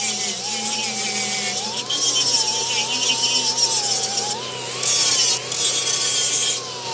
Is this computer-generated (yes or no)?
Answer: no